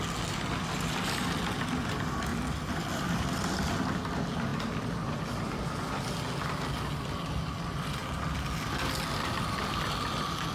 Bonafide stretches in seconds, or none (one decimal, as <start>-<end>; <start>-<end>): 0.0-2.3; 3.8-4.5; 5.5-10.5